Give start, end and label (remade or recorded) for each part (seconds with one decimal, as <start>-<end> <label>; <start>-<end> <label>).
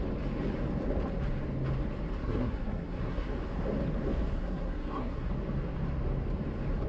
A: 0.0-2.2 recorded; 2.2-3.3 remade; 3.3-4.4 recorded; 4.4-5.3 remade; 5.3-6.9 recorded